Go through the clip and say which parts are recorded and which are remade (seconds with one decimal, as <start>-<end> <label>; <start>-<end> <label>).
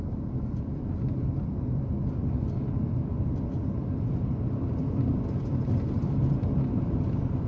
0.0-6.2 recorded; 6.2-6.8 remade; 6.8-7.5 recorded